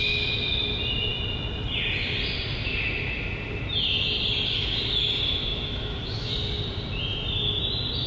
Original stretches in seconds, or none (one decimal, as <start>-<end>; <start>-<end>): 0.0-5.5; 6.3-8.1